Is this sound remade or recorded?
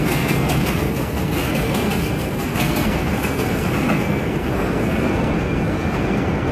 remade